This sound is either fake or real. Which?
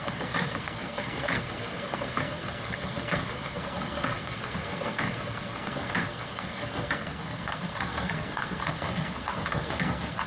fake